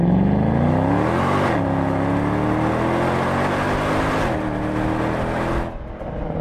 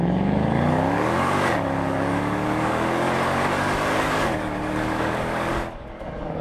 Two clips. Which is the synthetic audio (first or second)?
second